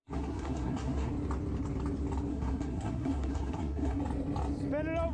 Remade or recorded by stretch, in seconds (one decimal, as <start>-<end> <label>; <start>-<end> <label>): 0.0-1.1 remade; 1.1-2.3 recorded; 2.3-4.0 remade; 4.0-5.1 recorded